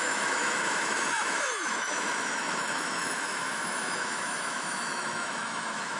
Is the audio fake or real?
fake